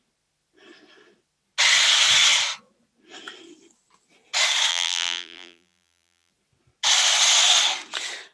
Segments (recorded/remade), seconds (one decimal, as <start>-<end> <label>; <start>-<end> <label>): 0.0-4.7 recorded; 4.7-6.3 remade; 6.3-8.3 recorded